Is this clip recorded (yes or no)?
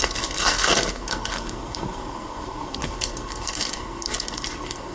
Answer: no